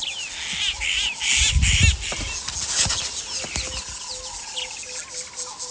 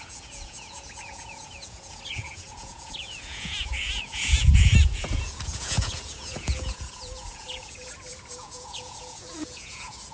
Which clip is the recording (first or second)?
first